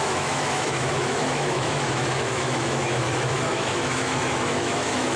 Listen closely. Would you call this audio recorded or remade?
remade